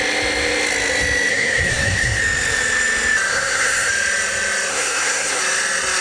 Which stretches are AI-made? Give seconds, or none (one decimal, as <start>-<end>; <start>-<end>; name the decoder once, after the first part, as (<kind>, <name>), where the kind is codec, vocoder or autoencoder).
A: 1.3-2.2 (codec, SNAC); 3.3-3.9; 4.7-5.4

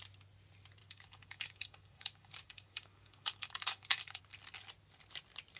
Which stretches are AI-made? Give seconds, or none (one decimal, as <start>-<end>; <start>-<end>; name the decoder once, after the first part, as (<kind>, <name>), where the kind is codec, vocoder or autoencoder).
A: 0.8-4.2 (codec, DAC)

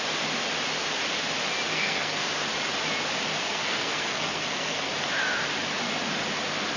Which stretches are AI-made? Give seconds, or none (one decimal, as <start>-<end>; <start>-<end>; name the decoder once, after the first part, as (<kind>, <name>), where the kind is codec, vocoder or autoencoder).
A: 1.7-2.3 (codec, SNAC); 3.4-4.9

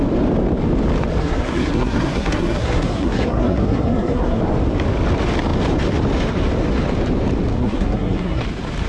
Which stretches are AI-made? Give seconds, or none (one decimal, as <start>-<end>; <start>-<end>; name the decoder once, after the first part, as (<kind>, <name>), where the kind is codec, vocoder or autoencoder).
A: 1.2-4.4 (codec, SNAC); 7.5-8.4

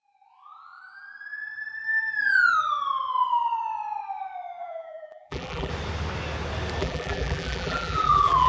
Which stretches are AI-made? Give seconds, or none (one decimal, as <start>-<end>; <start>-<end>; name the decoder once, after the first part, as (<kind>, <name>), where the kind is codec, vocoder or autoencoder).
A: 4.6-5.7 (vocoder, BigVGAN v2); 6.8-8.5

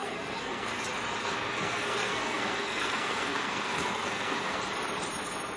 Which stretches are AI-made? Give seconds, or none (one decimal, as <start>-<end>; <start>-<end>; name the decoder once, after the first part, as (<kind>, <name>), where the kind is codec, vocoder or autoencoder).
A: 0.0-0.7 (codec, SNAC); 1.2-4.6